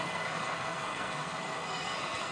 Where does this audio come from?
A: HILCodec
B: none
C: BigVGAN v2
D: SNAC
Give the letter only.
D